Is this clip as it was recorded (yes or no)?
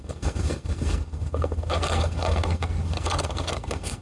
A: no